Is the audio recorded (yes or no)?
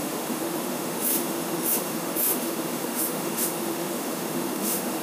no